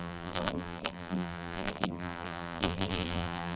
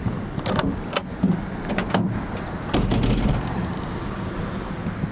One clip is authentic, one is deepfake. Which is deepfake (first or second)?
first